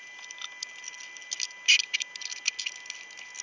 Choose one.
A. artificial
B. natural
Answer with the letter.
B